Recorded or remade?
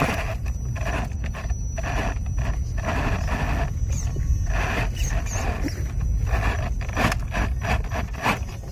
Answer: recorded